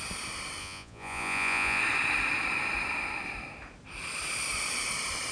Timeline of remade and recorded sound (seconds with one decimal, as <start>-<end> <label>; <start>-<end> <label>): 0.0-0.6 recorded; 0.6-1.8 remade; 1.8-5.3 recorded